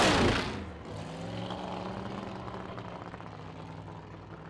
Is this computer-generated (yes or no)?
no